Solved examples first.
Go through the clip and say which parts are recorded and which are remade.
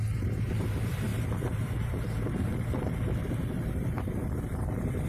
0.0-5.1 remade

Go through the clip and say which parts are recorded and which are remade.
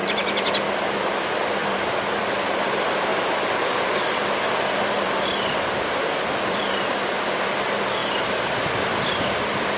0.0-9.8 remade